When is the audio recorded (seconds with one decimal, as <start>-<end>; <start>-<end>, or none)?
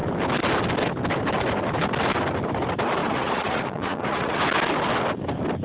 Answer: 0.0-3.0; 4.4-5.6